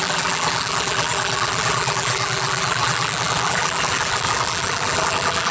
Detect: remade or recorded remade